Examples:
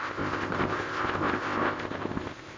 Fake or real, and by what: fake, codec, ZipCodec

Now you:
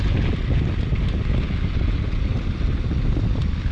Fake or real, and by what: real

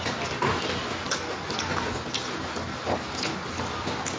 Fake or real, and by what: real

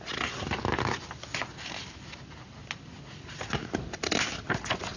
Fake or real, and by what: real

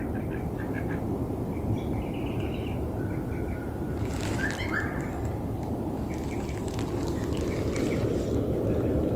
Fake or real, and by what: real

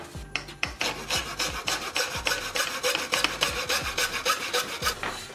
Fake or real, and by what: real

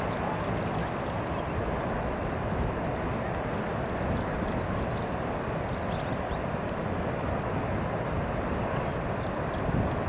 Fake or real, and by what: real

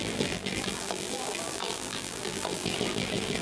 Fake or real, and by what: fake, vocoder, BigVGAN v2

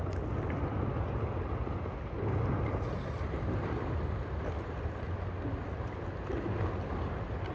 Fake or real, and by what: real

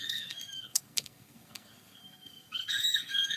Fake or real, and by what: fake, codec, SNAC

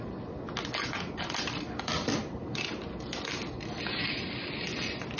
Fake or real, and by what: real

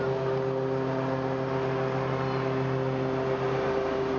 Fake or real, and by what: real